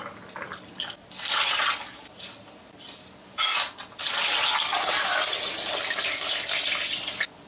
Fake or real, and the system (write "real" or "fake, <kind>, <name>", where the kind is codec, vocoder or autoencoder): real